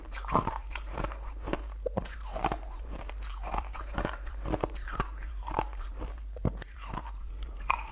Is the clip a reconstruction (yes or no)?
yes